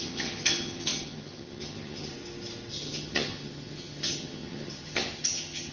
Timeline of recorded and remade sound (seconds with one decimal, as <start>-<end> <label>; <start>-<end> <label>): 0.0-2.1 remade; 2.1-2.7 recorded; 2.7-5.7 remade